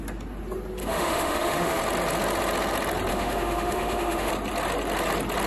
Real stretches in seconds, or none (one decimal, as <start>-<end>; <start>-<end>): 0.0-0.8; 1.8-3.1; 4.3-5.5